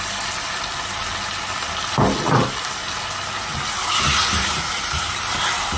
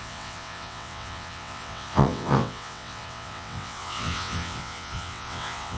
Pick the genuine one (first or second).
first